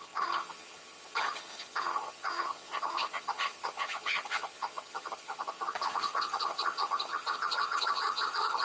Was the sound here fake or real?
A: fake